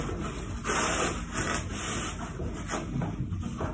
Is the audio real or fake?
real